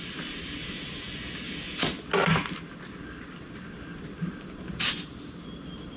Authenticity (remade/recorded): recorded